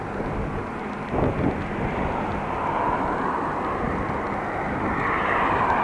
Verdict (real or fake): real